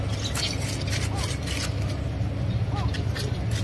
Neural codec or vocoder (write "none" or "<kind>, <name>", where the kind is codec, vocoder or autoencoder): none